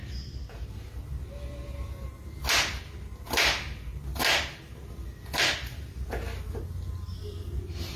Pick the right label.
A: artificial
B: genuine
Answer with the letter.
B